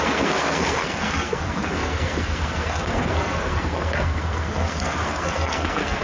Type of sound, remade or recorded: remade